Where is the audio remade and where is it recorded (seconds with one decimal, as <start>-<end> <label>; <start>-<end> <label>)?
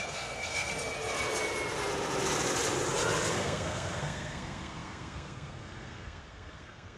0.0-0.7 remade; 0.7-3.3 recorded; 3.3-7.0 remade